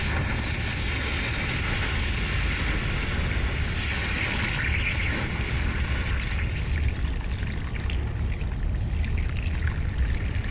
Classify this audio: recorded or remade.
recorded